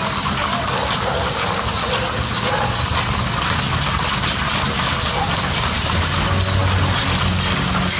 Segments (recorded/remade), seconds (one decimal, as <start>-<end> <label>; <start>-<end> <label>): 0.0-8.0 recorded